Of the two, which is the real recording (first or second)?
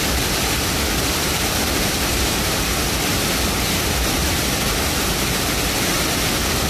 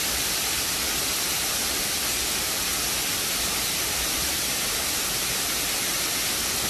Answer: second